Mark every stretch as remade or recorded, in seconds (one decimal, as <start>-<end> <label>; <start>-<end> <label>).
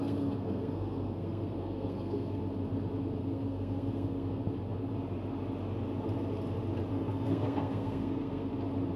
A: 0.0-2.4 remade; 2.4-3.2 recorded; 3.2-4.4 remade; 4.4-6.9 recorded; 6.9-8.5 remade; 8.5-9.0 recorded